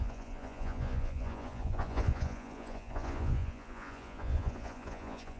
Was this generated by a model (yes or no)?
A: yes